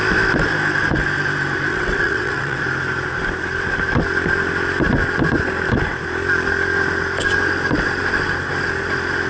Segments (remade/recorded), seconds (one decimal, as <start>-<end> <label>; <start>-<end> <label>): 0.0-1.7 recorded; 1.7-2.6 remade; 2.6-9.3 recorded